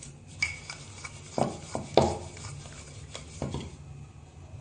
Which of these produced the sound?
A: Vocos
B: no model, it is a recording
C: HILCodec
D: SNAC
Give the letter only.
B